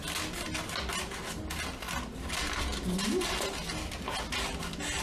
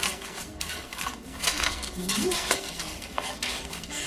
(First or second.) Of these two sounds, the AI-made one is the second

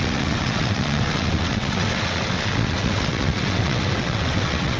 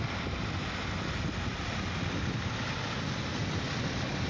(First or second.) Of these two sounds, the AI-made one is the first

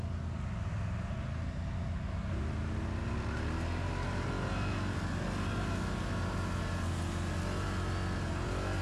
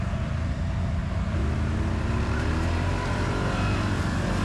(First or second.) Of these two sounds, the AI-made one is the second